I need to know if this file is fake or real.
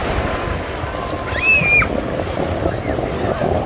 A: real